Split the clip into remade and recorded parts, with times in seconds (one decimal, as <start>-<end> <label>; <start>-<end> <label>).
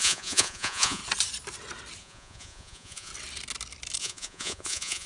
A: 0.0-1.0 remade; 1.0-2.0 recorded; 2.0-3.1 remade; 3.1-4.0 recorded; 4.0-5.1 remade